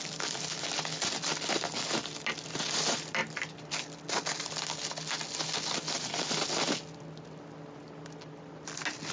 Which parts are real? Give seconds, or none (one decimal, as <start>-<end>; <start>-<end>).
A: 0.0-9.1